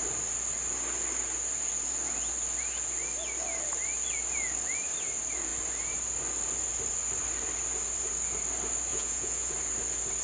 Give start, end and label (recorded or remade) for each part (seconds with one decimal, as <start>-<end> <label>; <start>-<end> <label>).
0.0-8.9 recorded; 8.9-9.5 remade; 9.5-10.2 recorded